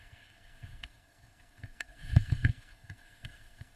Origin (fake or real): fake